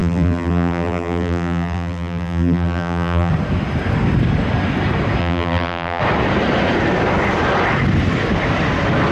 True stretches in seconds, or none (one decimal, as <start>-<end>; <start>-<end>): 3.3-5.2; 6.0-9.1